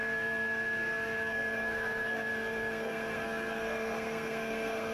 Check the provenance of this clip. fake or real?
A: fake